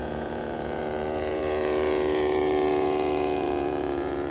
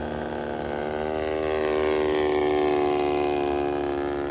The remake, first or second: first